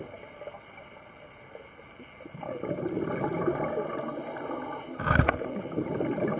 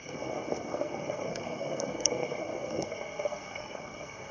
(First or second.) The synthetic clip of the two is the second